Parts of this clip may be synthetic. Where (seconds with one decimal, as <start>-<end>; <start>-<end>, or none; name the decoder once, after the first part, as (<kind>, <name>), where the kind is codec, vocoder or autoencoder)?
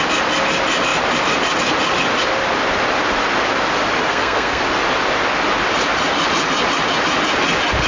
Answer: 4.1-4.6 (codec, SNAC)